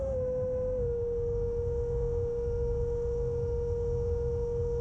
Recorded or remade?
remade